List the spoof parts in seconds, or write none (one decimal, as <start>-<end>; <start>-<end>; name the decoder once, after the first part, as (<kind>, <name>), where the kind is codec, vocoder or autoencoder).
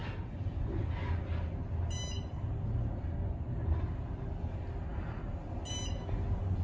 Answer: none